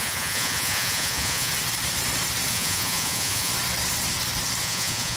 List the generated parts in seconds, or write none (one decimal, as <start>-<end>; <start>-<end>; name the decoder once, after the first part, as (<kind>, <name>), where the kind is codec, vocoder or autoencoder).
0.0-1.5 (vocoder, Vocos); 2.5-3.5; 4.6-5.2